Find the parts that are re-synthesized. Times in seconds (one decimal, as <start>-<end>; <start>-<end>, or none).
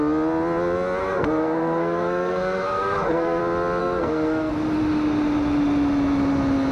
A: 1.0-3.4; 3.8-4.5